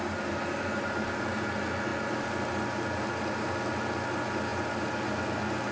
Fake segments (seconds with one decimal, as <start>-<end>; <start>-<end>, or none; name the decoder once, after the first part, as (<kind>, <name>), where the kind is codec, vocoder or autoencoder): none